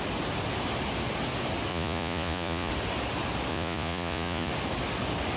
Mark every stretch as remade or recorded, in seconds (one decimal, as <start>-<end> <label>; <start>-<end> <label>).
0.0-1.7 recorded; 1.7-2.7 remade; 2.7-3.5 recorded; 3.5-4.5 remade; 4.5-5.4 recorded